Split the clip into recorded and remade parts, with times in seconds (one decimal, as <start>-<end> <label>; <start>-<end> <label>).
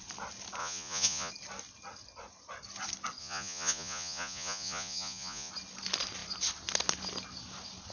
0.0-0.6 recorded; 0.6-1.3 remade; 1.3-3.2 recorded; 3.2-5.5 remade; 5.5-7.9 recorded